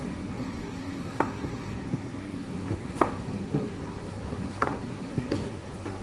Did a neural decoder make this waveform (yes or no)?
yes